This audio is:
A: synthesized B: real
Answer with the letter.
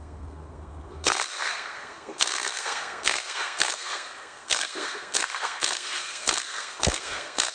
A